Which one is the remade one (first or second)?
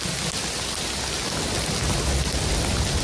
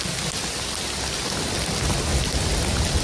second